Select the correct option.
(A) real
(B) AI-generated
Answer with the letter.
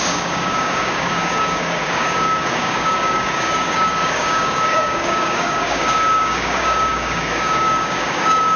B